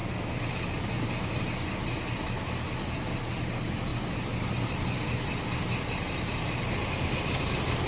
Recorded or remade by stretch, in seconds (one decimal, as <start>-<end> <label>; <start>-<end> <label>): 0.0-7.9 recorded